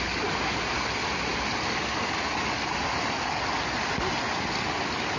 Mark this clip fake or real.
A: real